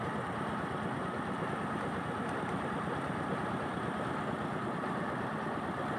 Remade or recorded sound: remade